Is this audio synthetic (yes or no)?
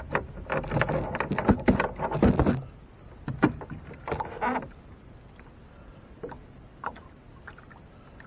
no